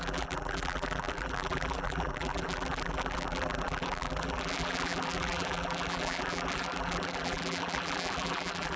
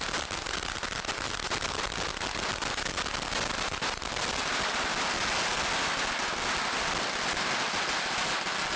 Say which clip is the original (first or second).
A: second